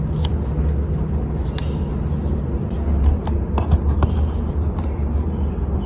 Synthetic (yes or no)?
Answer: no